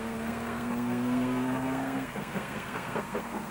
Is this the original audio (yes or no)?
no